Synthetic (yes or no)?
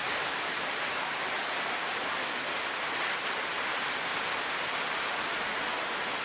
no